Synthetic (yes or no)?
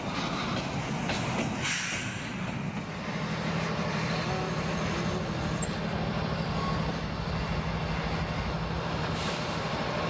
no